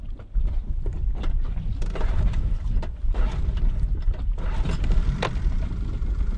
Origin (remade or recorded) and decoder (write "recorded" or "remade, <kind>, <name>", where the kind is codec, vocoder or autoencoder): remade, vocoder, BigVGAN v2